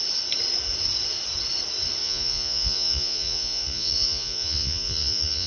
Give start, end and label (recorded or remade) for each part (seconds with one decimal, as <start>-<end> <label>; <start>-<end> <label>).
0.0-2.0 recorded; 2.0-5.5 remade